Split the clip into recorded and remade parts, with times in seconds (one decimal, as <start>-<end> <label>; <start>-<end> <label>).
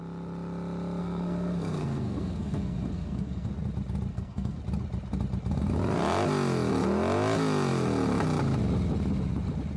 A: 0.0-1.0 recorded; 1.0-3.5 remade; 3.5-4.1 recorded; 4.1-4.6 remade; 4.6-9.8 recorded